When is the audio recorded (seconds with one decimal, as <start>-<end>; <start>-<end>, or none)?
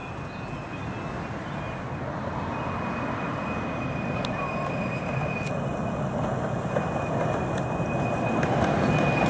0.0-9.3